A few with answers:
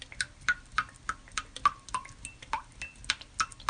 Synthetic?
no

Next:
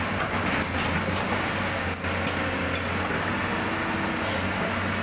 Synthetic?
no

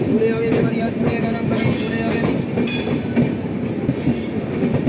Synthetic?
no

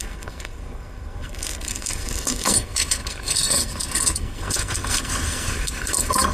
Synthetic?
yes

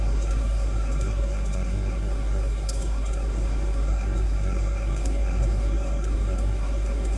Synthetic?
yes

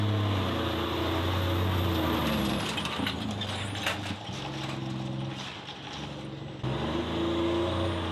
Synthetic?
no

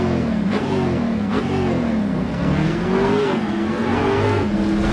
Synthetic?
yes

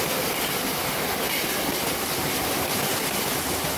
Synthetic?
no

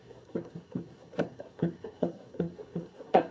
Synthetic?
yes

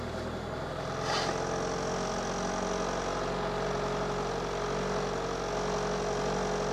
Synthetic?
no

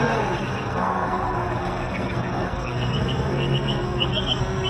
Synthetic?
yes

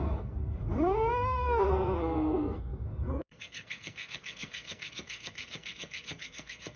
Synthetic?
yes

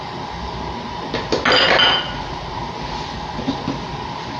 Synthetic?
no